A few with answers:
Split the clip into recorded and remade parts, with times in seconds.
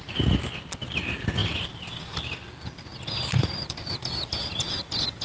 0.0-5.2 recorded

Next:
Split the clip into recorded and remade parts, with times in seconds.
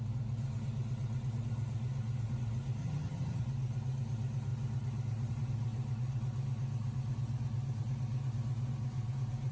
0.0-2.8 recorded; 2.8-3.4 remade; 3.4-9.5 recorded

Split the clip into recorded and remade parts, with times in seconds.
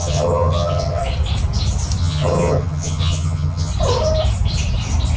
0.0-1.0 remade; 1.0-2.0 recorded; 2.0-3.7 remade; 3.7-5.2 recorded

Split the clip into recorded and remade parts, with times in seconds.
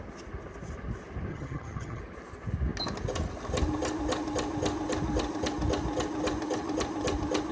0.0-1.3 recorded; 1.3-2.0 remade; 2.0-7.5 recorded